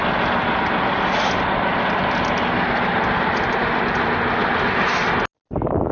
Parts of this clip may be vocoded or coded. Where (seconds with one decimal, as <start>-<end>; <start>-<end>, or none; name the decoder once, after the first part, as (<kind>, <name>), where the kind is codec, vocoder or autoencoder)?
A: none

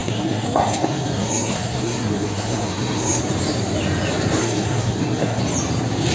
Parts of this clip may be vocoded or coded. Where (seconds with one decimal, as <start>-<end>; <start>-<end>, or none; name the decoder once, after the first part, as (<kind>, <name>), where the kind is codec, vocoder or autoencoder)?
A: 0.0-3.2 (codec, SNAC); 4.4-5.4

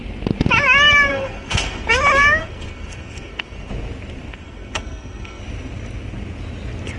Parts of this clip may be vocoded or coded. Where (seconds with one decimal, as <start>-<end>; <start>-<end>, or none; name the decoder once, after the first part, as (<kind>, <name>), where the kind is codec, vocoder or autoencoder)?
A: 1.1-1.9 (codec, SNAC); 2.4-3.7; 4.3-5.4

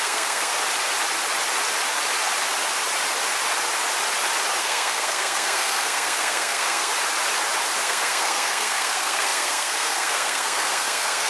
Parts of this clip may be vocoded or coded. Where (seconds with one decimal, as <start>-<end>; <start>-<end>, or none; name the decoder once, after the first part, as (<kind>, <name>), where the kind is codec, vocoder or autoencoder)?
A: 0.0-0.5 (codec, SNAC); 4.6-6.9; 7.8-11.3

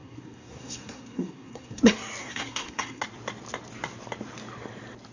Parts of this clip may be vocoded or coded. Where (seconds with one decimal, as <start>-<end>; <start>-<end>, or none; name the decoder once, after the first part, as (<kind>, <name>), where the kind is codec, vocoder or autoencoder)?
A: 0.0-1.8 (codec, SNAC); 2.2-3.0